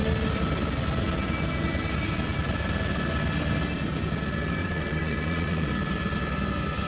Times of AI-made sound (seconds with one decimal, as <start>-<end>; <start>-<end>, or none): 4.6-5.7

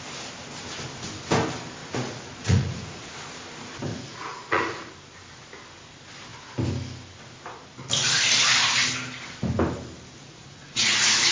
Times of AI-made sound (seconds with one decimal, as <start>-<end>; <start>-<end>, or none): 1.8-3.1; 3.9-4.9; 10.2-11.3

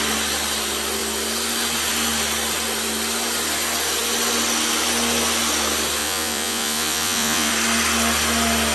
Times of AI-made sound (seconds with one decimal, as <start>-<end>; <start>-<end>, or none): 6.0-7.5